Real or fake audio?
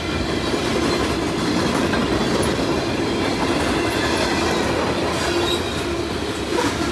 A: real